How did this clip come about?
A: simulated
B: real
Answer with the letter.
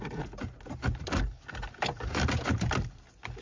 B